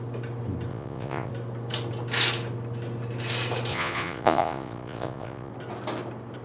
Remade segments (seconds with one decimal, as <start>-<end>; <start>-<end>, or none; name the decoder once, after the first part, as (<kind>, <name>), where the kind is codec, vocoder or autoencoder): 0.7-1.3 (vocoder, Vocos); 3.7-5.5